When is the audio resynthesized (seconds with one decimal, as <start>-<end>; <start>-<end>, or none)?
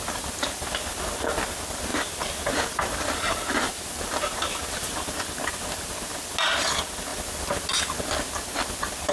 1.9-5.2